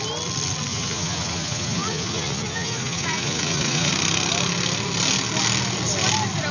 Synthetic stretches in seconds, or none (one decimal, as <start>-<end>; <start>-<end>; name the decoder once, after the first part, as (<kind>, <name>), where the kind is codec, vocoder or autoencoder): 0.7-3.9 (vocoder, Vocos)